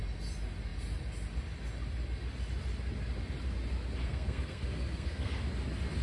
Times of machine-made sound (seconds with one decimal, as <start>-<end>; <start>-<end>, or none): 4.0-5.4

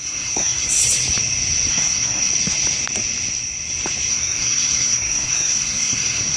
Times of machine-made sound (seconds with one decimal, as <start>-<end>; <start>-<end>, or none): 0.0-0.8; 1.7-2.3; 4.1-6.4